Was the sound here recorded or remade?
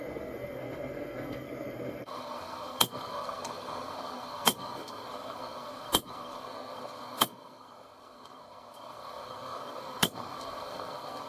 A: remade